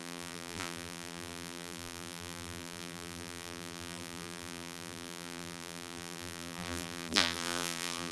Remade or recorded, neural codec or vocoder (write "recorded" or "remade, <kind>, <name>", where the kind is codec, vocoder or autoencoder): remade, vocoder, BigVGAN v2